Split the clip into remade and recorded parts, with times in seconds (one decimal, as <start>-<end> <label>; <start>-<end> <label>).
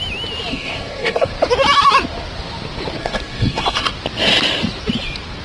0.0-0.5 recorded; 0.5-1.3 remade; 1.3-3.0 recorded; 3.0-3.9 remade; 3.9-5.4 recorded